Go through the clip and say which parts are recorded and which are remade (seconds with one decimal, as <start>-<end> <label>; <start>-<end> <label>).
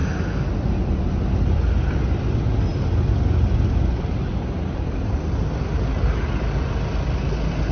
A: 0.0-7.7 recorded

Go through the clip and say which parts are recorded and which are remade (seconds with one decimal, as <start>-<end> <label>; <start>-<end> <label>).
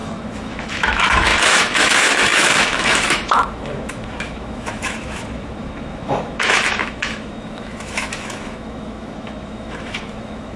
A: 0.0-10.6 remade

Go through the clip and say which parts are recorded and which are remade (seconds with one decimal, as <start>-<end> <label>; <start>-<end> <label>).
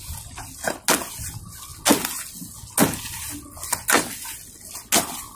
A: 0.0-5.3 recorded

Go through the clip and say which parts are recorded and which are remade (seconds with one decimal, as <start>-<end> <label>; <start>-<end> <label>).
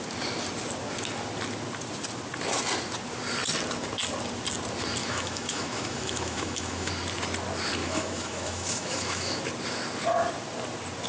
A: 0.0-5.0 recorded; 5.0-6.9 remade; 6.9-7.8 recorded; 7.8-9.4 remade; 9.4-11.1 recorded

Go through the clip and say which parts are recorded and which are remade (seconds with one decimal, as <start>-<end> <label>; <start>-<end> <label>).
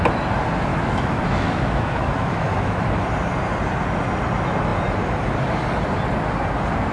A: 0.0-0.7 recorded; 0.7-2.8 remade; 2.8-6.9 recorded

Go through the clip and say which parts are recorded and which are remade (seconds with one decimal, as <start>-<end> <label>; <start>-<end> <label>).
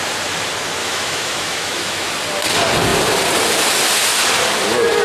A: 0.0-0.8 recorded; 0.8-2.1 remade; 2.1-5.0 recorded